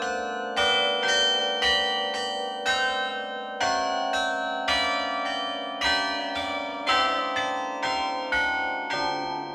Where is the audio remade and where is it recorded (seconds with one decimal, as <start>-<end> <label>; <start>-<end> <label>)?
0.0-6.2 recorded; 6.2-7.2 remade; 7.2-9.5 recorded